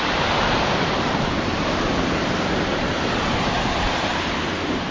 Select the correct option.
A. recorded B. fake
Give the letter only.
B